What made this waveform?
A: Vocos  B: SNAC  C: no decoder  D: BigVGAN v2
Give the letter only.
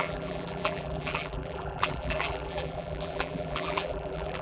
D